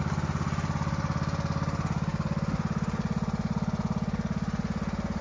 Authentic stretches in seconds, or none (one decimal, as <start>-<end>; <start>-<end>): 0.0-5.2